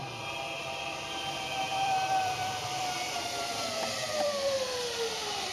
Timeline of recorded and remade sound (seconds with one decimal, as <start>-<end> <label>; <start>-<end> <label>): 0.0-0.6 recorded; 0.6-5.5 remade